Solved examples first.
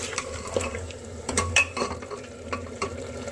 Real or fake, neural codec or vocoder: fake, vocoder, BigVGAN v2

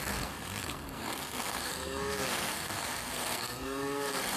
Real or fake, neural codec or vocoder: fake, codec, SNAC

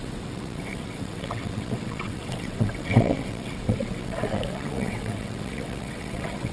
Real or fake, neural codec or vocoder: fake, vocoder, WaveNeXt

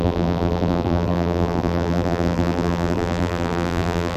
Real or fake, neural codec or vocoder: fake, vocoder, BigVGAN v2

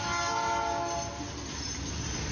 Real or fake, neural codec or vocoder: real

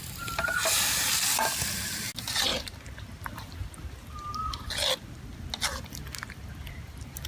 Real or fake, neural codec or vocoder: real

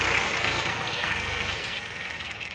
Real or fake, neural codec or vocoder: fake, codec, SNAC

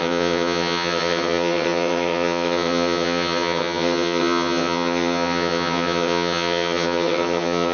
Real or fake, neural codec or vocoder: fake, vocoder, HiFi-GAN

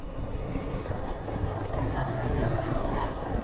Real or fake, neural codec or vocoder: fake, codec, SNAC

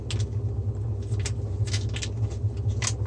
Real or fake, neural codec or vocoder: real